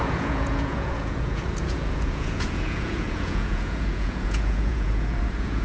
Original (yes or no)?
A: no